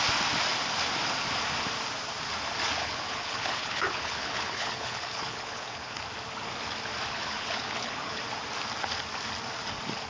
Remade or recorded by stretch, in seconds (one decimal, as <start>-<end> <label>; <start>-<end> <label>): 0.0-2.8 recorded; 2.8-6.0 remade; 6.0-7.1 recorded; 7.1-8.2 remade; 8.2-10.1 recorded